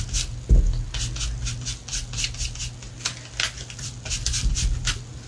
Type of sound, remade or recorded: recorded